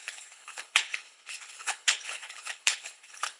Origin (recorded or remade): remade